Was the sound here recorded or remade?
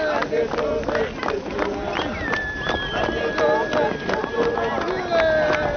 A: recorded